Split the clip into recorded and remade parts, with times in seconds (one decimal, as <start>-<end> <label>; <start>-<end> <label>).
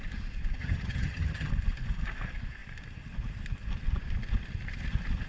0.0-0.6 recorded; 0.6-1.5 remade; 1.5-5.3 recorded